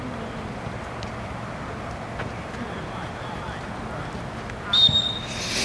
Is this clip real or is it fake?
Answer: real